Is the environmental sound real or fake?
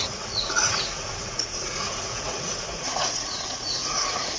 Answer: fake